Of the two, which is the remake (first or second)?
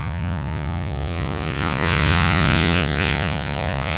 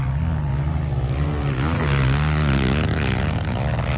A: first